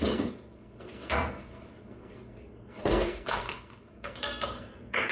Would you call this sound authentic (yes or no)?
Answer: no